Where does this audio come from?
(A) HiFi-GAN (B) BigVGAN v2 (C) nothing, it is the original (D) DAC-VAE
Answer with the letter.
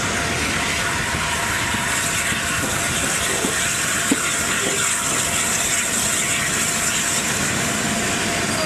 C